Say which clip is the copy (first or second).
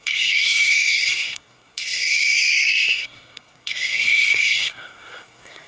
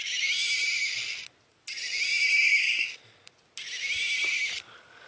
first